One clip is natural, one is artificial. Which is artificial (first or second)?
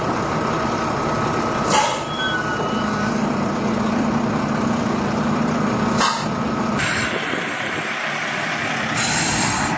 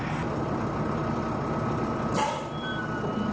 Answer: first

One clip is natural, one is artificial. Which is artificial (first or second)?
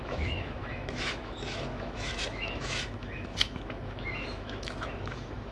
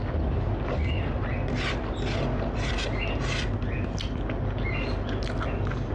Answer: first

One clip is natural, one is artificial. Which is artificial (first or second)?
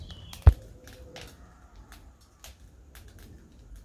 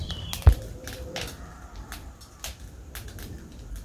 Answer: second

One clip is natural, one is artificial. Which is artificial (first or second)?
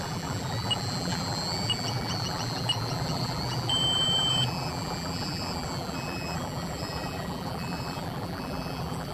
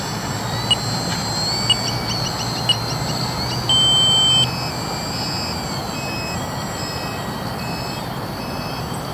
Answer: first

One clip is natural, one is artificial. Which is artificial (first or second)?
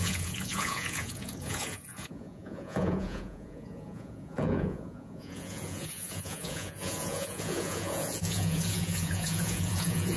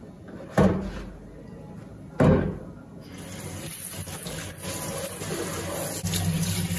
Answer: first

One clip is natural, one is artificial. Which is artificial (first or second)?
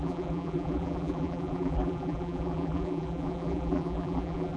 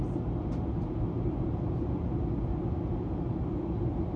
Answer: first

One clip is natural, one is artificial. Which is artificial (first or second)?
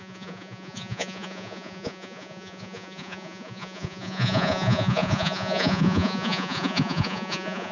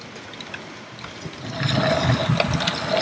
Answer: first